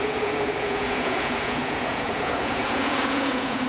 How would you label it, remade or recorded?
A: remade